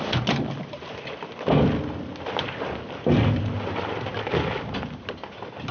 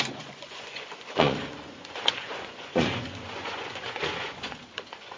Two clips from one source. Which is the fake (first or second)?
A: second